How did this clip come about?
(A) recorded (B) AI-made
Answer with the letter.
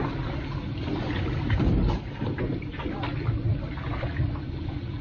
A